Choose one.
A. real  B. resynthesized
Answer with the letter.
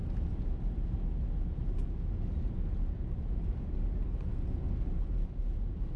A